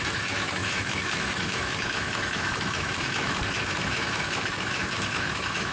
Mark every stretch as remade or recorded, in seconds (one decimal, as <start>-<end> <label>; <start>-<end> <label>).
0.0-5.7 remade